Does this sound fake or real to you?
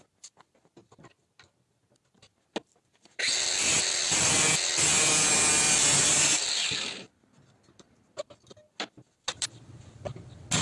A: real